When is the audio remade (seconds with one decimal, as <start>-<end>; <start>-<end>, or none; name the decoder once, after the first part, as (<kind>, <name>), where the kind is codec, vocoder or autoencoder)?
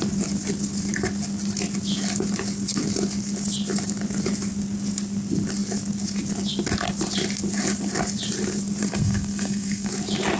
8.8-9.9 (codec, SNAC)